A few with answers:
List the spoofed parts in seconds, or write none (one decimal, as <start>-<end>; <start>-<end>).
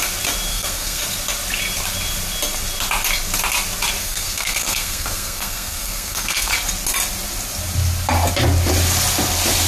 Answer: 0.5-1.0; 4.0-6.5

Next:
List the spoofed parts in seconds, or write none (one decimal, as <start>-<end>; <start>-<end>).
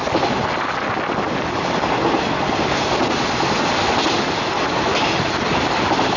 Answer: none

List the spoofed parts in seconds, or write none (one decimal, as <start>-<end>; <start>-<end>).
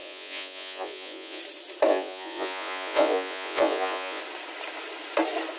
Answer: 0.0-1.4; 1.9-4.2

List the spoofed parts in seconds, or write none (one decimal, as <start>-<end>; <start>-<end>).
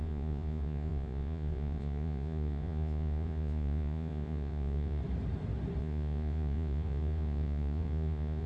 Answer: 0.0-5.0; 5.8-8.5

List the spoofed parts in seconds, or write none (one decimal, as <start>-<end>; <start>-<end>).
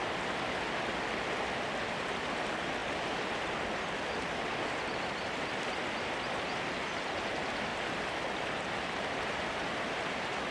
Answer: 7.7-9.1